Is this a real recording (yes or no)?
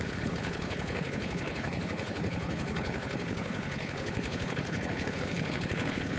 no